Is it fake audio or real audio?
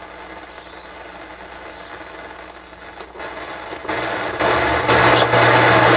real